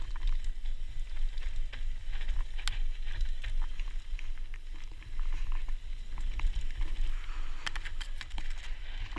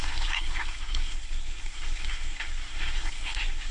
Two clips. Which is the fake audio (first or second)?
second